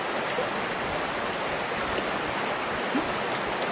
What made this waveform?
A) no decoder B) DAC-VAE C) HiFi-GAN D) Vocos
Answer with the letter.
A